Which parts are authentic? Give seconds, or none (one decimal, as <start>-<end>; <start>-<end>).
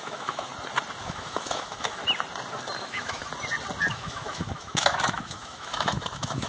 0.5-1.0; 2.0-2.8; 3.2-3.9